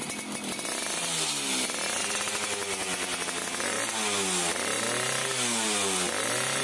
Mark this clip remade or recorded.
recorded